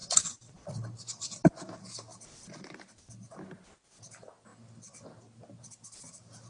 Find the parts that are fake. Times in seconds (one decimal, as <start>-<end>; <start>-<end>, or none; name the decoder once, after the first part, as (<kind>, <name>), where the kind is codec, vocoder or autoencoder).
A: none